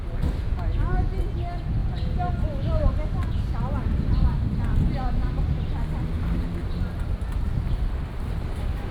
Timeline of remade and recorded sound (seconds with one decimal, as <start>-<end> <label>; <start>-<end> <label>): 0.0-8.9 recorded